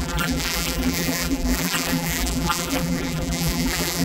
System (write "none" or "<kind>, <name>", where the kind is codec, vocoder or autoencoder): vocoder, BigVGAN v2